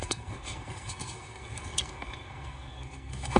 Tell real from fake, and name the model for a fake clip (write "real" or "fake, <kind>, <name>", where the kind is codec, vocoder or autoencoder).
fake, codec, SNAC